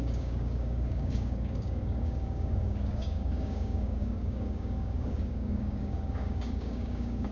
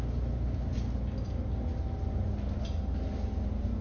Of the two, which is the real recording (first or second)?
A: second